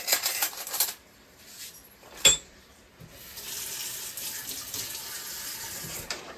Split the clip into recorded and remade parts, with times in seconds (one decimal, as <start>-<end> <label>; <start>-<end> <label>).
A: 0.0-2.9 remade; 2.9-5.3 recorded; 5.3-6.4 remade